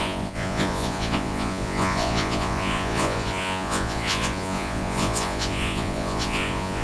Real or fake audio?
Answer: fake